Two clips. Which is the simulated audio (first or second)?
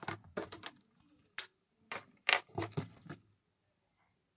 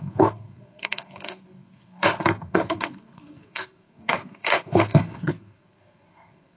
second